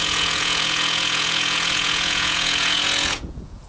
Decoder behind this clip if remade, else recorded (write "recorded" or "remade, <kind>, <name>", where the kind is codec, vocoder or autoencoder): remade, vocoder, Vocos